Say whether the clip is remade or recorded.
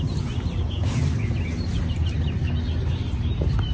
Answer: recorded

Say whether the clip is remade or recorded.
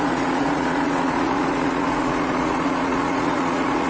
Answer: remade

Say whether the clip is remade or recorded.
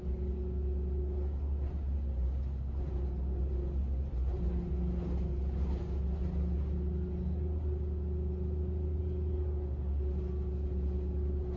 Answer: recorded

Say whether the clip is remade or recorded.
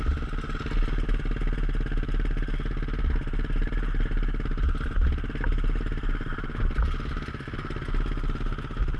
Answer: recorded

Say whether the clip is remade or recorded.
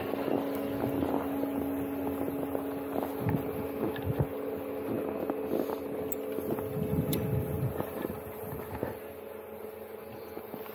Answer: recorded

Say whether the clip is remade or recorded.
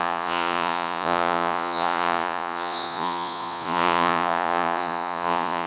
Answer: remade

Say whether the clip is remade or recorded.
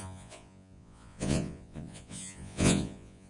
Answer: remade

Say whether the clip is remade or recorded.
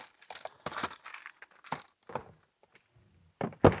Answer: recorded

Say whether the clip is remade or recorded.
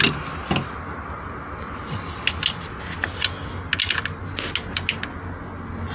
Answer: recorded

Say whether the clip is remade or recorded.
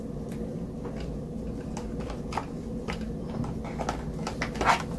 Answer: recorded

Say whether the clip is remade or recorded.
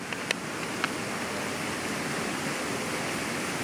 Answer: recorded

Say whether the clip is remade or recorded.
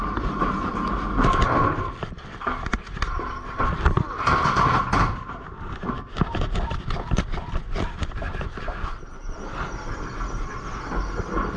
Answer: recorded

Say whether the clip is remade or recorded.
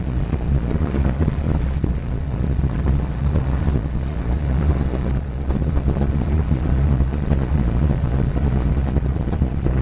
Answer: remade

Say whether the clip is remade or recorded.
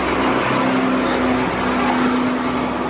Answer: recorded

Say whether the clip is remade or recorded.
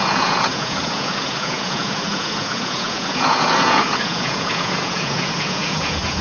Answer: remade